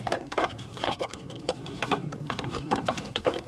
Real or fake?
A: fake